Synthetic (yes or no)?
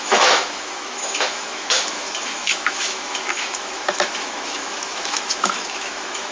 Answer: yes